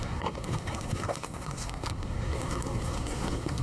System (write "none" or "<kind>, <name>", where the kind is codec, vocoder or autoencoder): codec, SNAC